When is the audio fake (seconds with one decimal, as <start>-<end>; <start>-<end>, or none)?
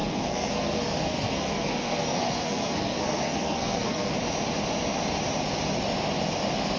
0.0-4.1